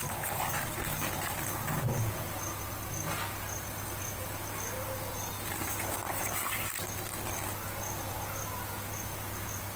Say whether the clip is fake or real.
real